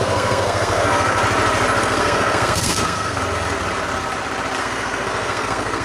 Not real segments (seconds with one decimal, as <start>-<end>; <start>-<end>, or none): 0.0-1.2; 1.8-3.2; 4.6-5.8